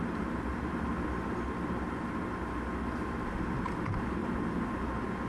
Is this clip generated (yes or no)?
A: no